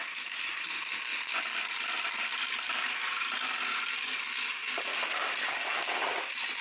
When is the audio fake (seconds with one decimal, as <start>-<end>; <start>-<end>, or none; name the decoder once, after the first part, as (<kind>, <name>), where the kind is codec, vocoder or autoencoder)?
none